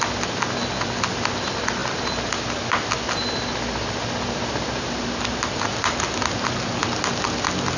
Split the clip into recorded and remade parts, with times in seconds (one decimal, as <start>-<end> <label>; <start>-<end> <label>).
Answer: 0.0-7.8 recorded